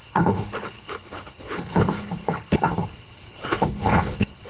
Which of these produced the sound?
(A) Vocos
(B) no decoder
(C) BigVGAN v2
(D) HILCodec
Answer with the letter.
D